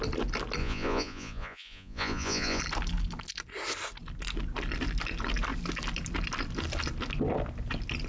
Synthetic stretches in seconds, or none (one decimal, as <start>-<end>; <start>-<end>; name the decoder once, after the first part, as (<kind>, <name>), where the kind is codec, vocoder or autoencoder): 0.6-2.6 (vocoder, Vocos)